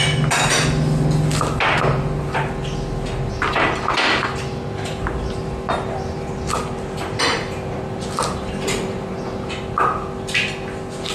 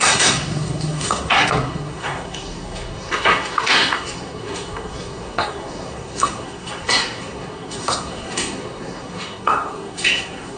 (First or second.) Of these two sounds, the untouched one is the first